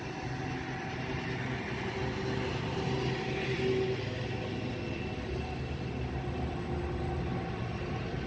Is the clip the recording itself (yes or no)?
yes